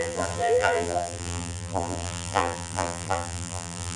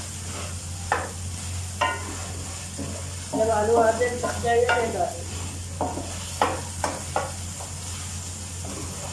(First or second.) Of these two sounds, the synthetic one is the first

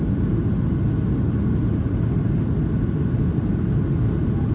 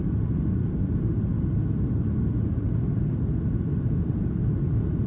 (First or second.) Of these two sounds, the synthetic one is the second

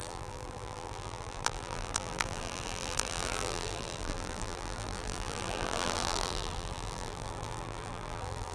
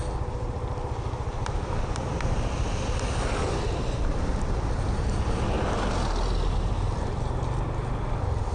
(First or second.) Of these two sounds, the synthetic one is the first